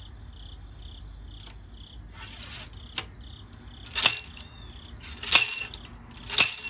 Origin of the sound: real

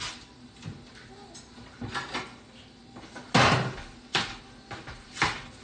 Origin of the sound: real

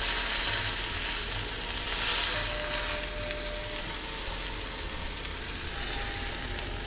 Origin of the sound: real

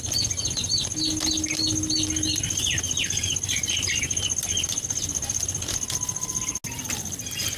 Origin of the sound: real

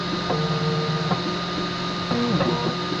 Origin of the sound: real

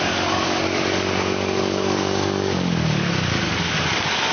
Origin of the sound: fake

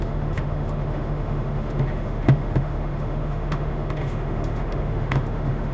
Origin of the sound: fake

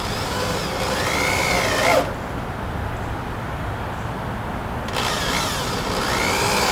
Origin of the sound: real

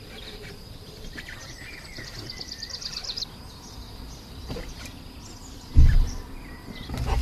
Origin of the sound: fake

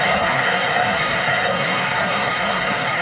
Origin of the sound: fake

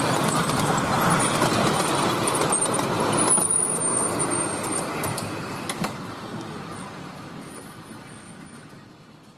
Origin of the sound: real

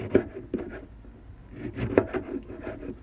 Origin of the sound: fake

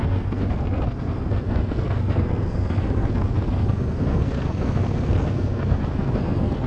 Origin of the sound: fake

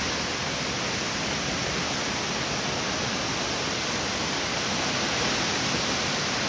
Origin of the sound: real